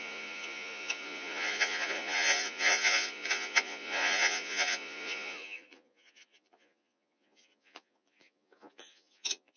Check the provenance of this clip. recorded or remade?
remade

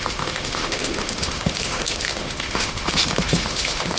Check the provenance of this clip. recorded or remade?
remade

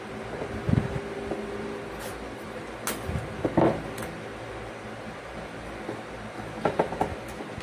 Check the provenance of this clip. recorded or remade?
recorded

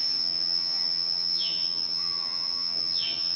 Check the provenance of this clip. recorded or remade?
remade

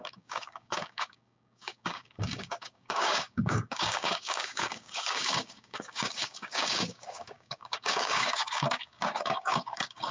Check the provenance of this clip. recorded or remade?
remade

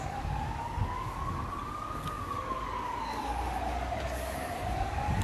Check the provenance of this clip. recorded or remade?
remade